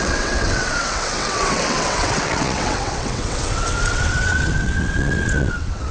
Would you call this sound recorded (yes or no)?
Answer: no